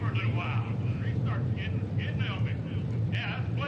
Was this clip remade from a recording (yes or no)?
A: yes